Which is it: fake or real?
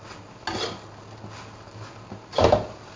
real